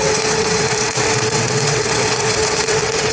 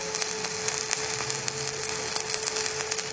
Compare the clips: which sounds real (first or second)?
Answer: second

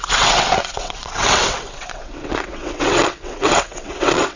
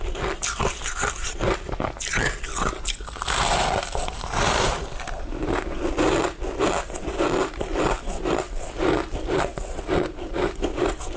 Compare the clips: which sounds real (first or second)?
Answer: second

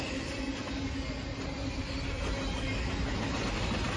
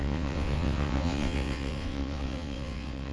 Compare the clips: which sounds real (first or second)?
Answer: first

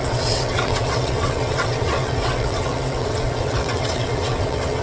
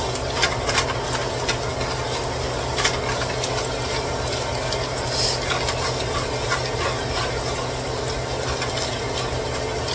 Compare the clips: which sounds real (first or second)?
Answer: second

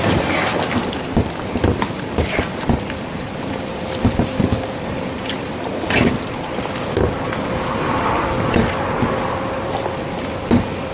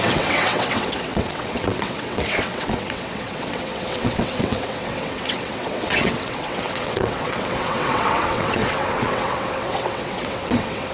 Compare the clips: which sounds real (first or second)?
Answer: first